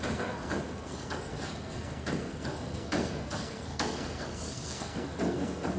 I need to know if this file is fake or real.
fake